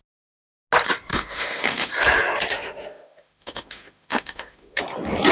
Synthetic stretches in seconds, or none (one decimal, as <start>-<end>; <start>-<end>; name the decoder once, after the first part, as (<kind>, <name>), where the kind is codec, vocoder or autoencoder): 1.1-1.9 (autoencoder, DAC-VAE); 2.5-4.8